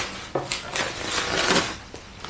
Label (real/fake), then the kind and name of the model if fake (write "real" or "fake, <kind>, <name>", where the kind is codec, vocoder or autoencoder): real